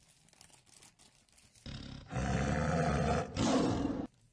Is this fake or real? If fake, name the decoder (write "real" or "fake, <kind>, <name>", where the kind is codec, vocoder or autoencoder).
real